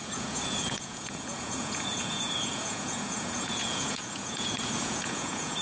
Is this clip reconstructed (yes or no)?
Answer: yes